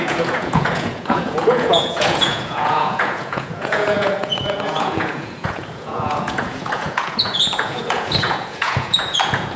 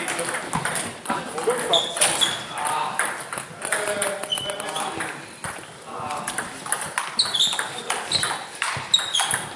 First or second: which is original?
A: second